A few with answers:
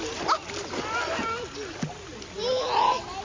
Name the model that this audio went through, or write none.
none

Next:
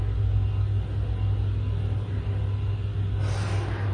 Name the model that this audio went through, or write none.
none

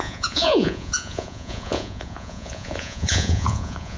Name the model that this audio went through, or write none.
vocoder, Vocos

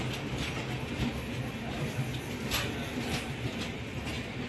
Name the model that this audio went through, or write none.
none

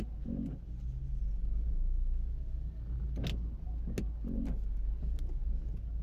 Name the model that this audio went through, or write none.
none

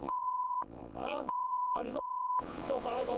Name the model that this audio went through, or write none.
vocoder, Vocos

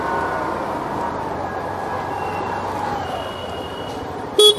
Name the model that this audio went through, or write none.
none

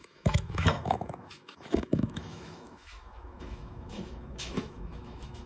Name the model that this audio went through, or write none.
autoencoder, DAC-VAE